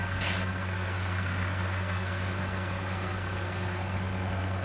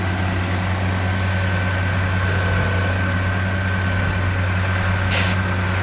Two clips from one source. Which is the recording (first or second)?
second